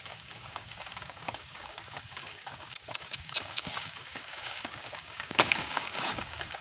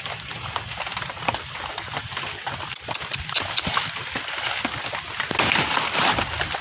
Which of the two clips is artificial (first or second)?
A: first